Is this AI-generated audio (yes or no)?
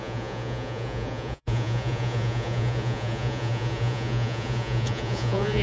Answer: yes